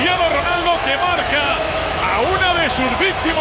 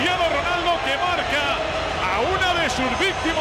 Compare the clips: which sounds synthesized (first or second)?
first